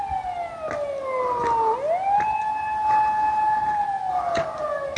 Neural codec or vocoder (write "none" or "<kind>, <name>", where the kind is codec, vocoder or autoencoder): none